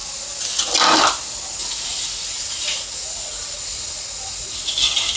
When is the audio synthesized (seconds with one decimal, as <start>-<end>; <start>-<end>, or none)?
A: 1.6-4.7